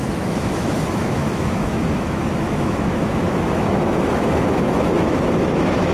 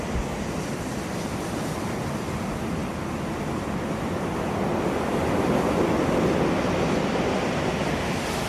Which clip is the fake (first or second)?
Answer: first